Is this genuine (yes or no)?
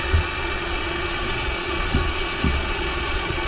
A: no